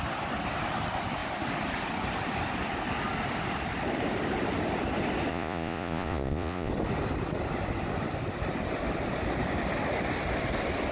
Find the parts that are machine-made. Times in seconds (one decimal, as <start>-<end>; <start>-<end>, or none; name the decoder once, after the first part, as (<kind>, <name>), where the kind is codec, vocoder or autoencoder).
5.3-6.7 (vocoder, Vocos)